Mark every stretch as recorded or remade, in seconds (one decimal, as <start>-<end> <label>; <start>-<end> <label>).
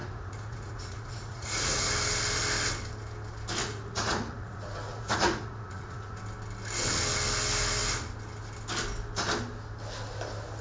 0.0-1.9 remade; 1.9-3.6 recorded; 3.6-6.2 remade; 6.2-10.6 recorded